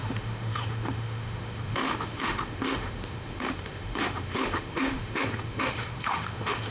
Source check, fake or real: fake